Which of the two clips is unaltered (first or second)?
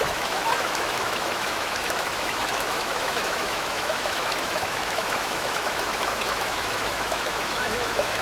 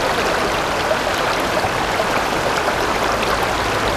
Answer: second